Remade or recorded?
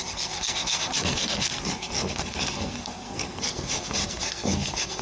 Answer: remade